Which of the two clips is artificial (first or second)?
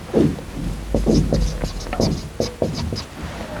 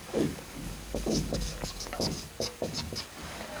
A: second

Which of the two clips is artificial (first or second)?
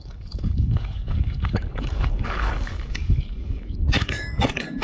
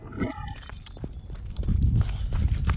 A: first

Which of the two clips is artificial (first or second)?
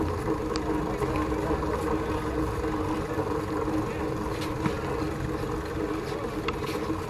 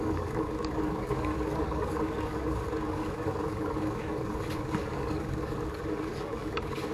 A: second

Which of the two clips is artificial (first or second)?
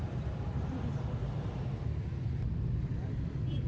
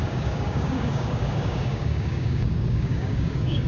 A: second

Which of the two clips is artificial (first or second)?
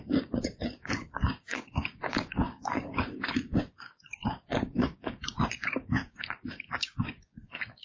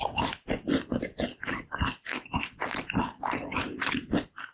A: first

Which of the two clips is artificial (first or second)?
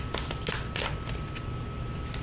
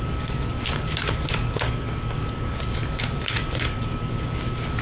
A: second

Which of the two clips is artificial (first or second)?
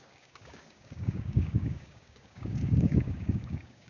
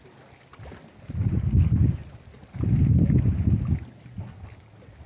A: first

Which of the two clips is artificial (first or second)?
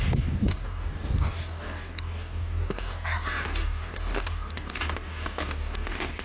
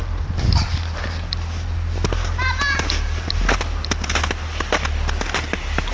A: first